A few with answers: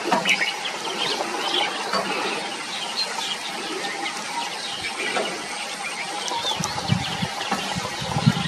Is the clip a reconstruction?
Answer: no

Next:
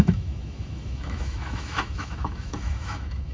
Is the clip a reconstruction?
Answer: yes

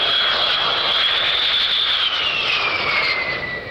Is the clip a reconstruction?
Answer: no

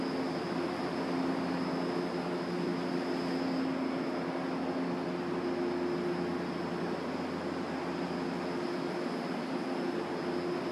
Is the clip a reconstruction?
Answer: no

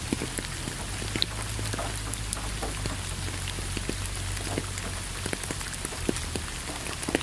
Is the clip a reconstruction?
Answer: no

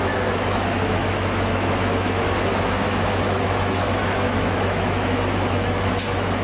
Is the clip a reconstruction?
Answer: yes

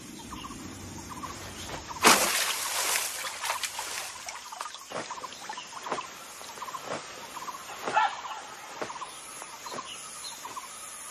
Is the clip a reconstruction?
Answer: no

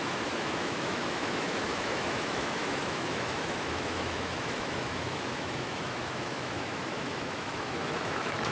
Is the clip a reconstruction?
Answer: yes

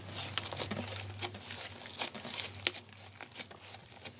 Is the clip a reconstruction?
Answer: no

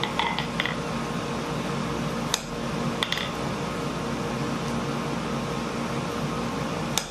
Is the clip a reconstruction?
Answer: no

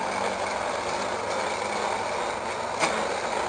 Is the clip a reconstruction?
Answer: no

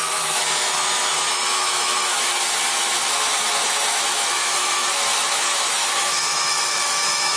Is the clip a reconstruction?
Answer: yes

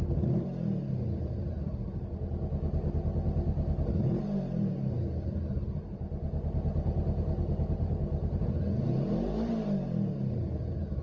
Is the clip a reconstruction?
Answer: no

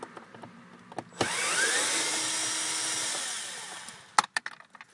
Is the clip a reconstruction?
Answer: no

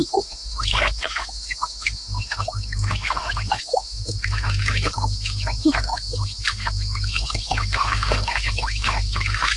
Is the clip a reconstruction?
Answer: yes